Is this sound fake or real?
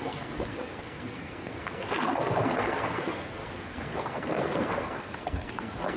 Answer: fake